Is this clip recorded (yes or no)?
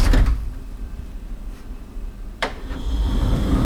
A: no